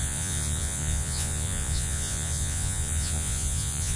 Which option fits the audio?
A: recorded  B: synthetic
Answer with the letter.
B